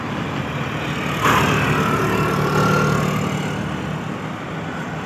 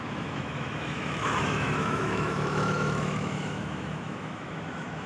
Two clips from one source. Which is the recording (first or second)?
first